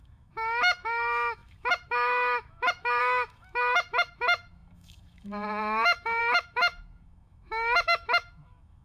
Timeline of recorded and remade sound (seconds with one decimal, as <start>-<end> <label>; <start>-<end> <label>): 0.0-8.8 remade